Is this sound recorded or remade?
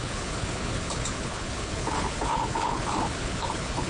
remade